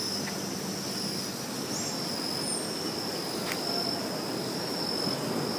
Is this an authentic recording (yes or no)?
yes